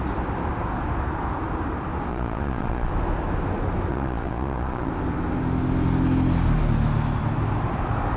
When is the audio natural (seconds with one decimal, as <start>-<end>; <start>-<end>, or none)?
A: 0.0-2.1; 2.9-3.9; 4.9-8.2